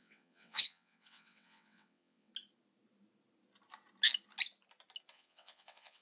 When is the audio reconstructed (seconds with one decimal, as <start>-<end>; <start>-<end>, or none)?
0.0-2.3; 5.1-6.0

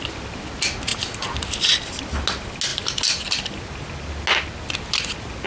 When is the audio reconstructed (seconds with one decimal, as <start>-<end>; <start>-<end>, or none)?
none

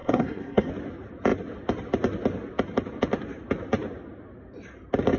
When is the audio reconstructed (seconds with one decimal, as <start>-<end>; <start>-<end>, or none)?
0.0-0.7

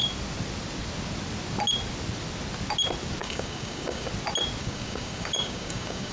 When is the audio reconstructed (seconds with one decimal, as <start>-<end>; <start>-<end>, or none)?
3.2-4.1; 4.6-6.1

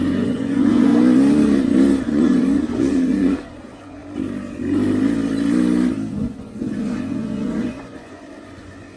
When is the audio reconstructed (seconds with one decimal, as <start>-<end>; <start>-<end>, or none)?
0.0-0.9; 2.0-4.0; 6.1-9.0